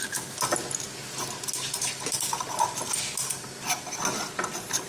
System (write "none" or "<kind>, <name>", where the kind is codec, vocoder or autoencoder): none